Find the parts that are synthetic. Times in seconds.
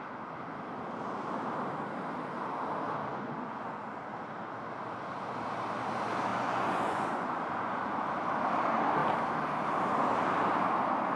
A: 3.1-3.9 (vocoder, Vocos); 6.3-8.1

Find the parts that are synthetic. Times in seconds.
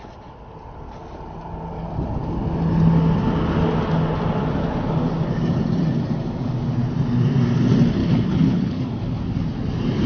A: 8.0-8.8 (codec, HILCodec)